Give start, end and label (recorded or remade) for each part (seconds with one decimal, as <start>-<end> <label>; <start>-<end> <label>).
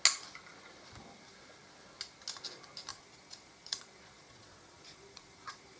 0.0-2.9 recorded; 2.9-5.8 remade